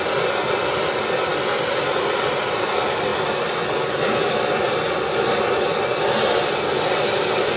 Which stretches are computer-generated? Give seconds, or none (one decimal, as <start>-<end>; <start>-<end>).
3.1-5.8